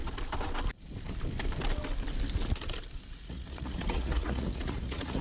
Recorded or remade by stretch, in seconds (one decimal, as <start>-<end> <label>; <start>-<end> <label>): 0.0-3.1 recorded; 3.1-5.2 remade